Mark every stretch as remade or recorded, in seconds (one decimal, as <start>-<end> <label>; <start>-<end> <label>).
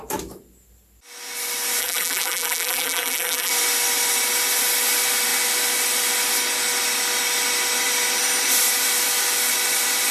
0.0-1.8 recorded; 1.8-3.5 remade; 3.5-10.1 recorded